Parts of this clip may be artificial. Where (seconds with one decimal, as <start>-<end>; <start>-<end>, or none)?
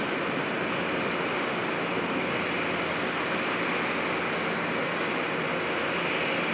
none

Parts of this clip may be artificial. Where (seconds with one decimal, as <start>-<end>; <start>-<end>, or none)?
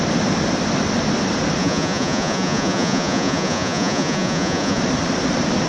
1.6-4.8